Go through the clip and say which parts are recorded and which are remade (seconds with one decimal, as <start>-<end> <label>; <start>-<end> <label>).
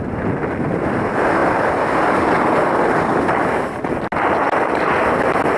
0.0-5.6 recorded